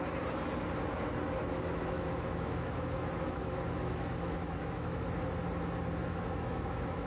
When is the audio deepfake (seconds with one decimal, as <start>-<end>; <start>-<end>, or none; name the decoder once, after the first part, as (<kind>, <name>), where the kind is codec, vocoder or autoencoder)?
1.4-5.0 (autoencoder, DAC-VAE); 6.0-7.1